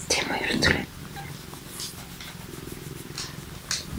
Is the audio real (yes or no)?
yes